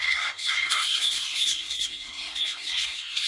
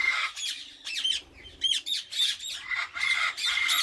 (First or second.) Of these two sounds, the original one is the second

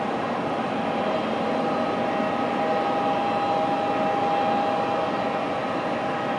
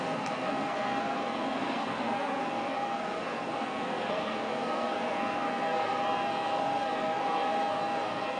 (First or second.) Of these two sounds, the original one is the first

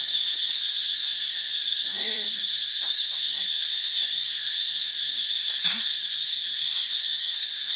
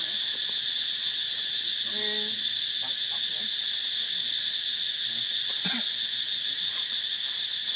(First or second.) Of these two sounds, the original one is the second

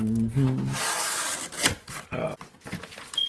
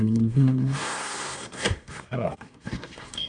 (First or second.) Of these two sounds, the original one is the first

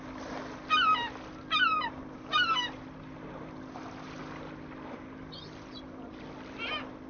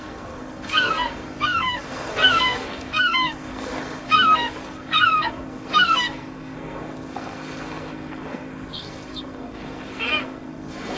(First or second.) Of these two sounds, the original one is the first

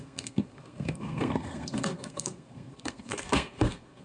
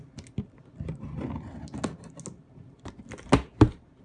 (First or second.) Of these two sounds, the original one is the second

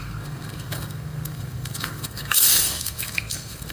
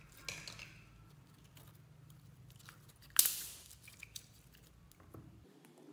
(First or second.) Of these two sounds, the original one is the second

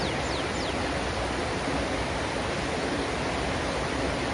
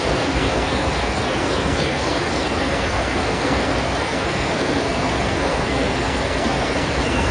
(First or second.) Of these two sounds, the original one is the first